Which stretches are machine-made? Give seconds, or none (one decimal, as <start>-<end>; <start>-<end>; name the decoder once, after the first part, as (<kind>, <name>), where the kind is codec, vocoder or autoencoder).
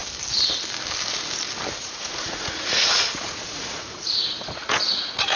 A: 1.8-5.4 (vocoder, Vocos)